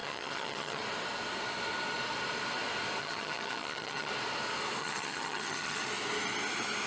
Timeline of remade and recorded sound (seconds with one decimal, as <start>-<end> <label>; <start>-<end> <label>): 0.0-0.8 remade; 0.8-3.0 recorded; 3.0-4.1 remade; 4.1-4.8 recorded; 4.8-5.8 remade; 5.8-6.9 recorded

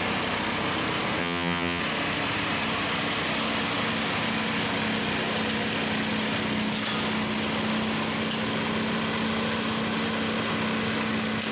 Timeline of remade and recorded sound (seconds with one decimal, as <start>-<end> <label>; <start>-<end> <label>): 0.0-1.2 recorded; 1.2-1.8 remade; 1.8-11.5 recorded